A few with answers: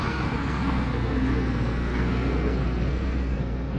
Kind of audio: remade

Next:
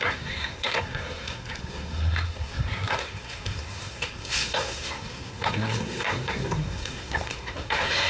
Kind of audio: remade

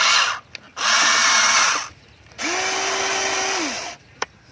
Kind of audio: recorded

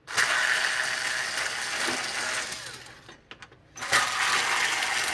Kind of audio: recorded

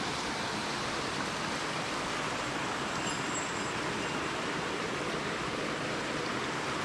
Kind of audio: recorded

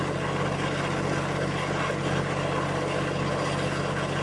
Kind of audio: recorded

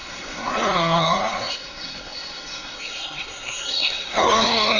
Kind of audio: remade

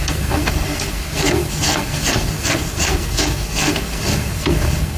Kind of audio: remade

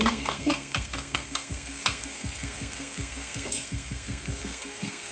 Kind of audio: remade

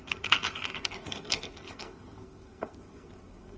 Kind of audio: remade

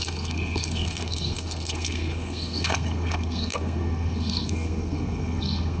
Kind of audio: remade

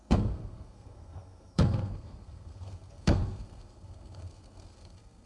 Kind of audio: remade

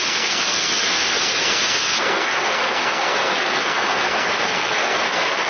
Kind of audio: remade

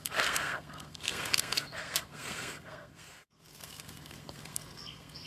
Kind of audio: remade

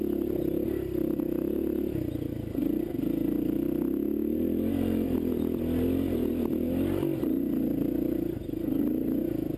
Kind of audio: recorded